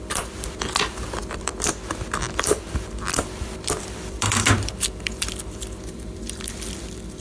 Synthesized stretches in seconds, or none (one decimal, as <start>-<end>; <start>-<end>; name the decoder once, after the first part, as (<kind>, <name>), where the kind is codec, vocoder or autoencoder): 0.0-1.5 (vocoder, BigVGAN v2); 2.2-7.2